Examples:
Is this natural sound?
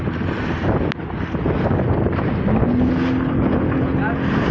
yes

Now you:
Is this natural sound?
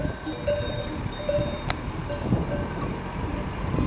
yes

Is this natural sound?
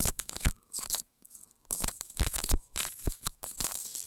no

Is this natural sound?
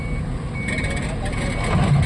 yes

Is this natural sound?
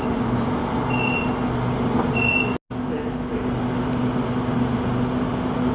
yes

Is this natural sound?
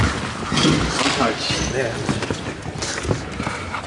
yes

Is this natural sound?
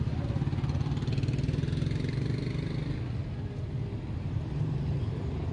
yes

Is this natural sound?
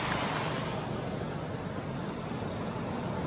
yes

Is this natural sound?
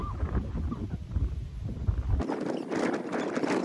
yes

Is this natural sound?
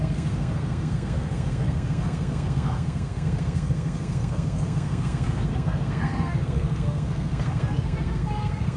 no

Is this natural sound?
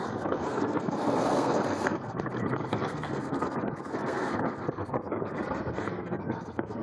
no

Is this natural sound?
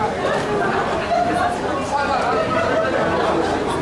yes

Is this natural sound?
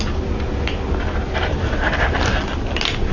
yes